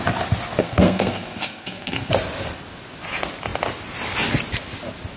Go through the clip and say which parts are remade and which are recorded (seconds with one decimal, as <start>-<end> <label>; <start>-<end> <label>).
0.0-0.6 recorded; 0.6-2.1 remade; 2.1-5.2 recorded